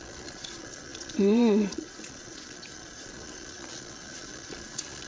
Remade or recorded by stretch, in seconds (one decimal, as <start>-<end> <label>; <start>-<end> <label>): 0.0-5.1 remade